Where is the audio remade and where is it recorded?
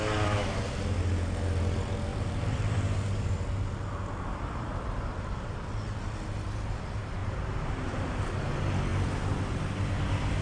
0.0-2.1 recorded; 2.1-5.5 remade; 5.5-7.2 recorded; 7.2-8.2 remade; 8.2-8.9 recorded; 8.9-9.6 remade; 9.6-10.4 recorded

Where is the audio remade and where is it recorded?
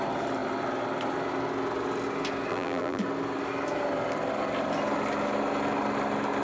0.0-2.5 recorded; 2.5-3.0 remade; 3.0-6.4 recorded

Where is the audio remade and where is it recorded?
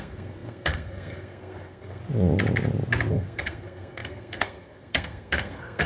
0.0-2.0 remade; 2.0-3.1 recorded; 3.1-5.9 remade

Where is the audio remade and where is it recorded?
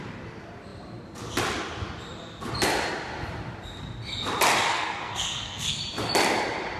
0.0-4.7 recorded; 4.7-5.8 remade; 5.8-6.8 recorded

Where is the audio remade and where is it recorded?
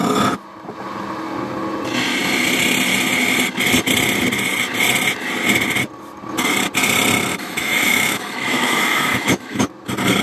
0.0-7.3 recorded; 7.3-9.6 remade; 9.6-10.2 recorded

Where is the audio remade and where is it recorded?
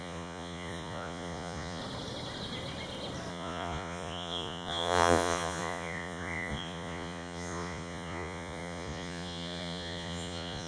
0.0-1.8 remade; 1.8-3.3 recorded; 3.3-10.7 remade